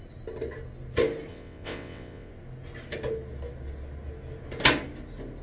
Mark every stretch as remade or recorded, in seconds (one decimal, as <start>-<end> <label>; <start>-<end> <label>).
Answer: 0.0-1.3 recorded; 1.3-2.3 remade; 2.3-5.4 recorded